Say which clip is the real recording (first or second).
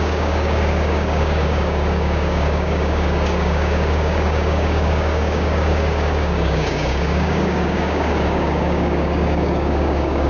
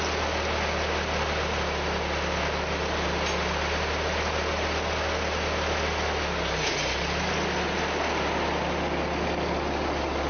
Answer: second